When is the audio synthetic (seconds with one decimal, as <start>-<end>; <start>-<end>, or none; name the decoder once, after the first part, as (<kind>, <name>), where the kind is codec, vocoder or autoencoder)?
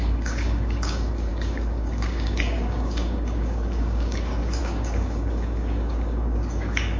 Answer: 0.0-7.0 (codec, DAC)